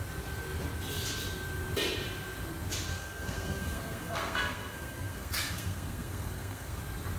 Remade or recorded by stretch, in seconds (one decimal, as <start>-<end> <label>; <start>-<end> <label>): 0.0-2.9 recorded; 2.9-6.8 remade; 6.8-7.2 recorded